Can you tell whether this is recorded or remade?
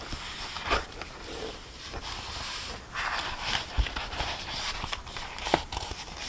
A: recorded